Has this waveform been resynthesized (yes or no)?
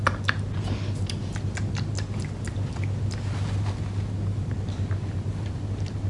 no